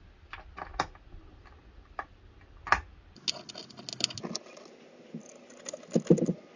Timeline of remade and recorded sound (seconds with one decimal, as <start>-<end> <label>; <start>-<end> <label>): 0.0-6.6 recorded